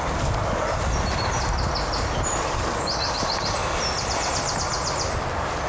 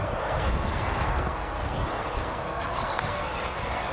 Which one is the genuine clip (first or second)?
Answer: first